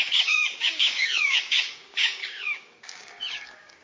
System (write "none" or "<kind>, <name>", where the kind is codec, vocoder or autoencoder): codec, DAC